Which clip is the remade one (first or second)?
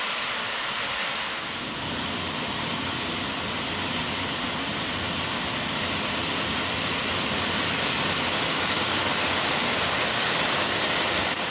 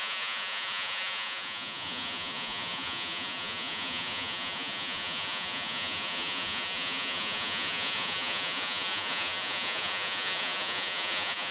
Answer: second